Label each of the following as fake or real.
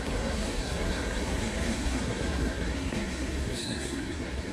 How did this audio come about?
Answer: fake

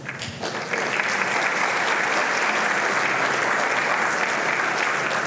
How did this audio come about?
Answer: real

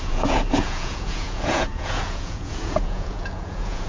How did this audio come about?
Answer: fake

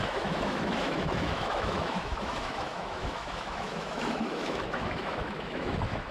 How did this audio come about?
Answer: fake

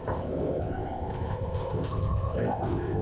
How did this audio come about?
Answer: fake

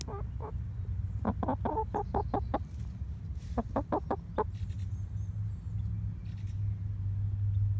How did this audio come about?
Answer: real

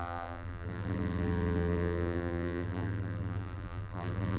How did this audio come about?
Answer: fake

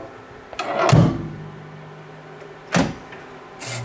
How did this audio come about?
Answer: real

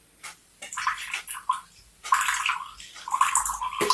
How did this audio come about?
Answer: real